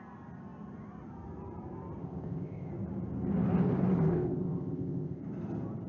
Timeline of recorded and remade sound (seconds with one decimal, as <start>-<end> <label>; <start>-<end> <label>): 0.0-2.0 recorded; 2.0-2.7 remade; 2.7-4.1 recorded; 4.1-5.2 remade; 5.2-5.9 recorded